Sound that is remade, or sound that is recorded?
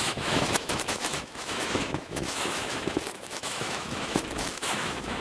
remade